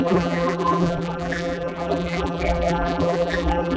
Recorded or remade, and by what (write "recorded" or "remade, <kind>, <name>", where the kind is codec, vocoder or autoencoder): remade, vocoder, BigVGAN v2